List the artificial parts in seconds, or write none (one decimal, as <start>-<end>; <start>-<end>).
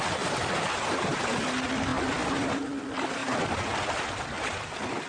none